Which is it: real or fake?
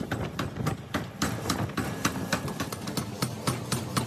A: real